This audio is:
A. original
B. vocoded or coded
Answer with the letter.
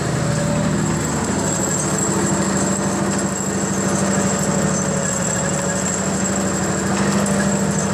A